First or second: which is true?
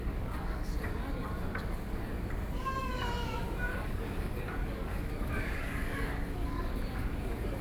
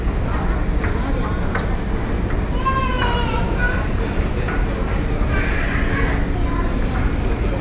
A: second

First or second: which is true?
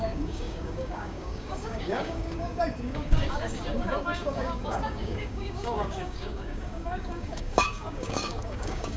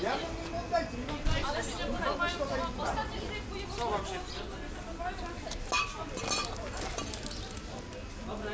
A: second